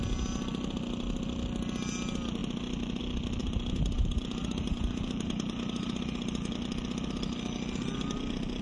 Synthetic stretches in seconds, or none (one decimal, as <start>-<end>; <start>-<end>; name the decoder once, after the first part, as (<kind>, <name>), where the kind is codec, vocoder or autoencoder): 3.4-6.0 (vocoder, BigVGAN v2)